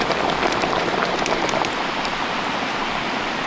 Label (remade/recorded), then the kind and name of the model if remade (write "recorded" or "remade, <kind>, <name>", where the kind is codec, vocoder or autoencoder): remade, vocoder, BigVGAN v2